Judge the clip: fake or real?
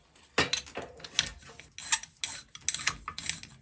real